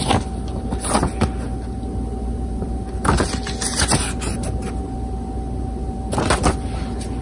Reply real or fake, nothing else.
real